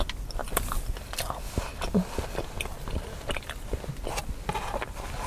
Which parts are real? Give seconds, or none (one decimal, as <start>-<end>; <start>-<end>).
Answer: 0.0-5.3